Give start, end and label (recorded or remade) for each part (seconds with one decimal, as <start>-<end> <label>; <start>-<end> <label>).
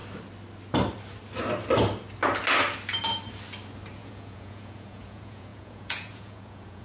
0.0-4.0 recorded; 4.0-6.8 remade